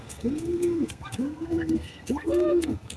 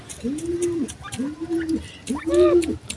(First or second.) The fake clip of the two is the first